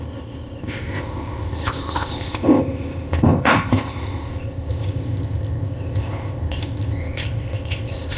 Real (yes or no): no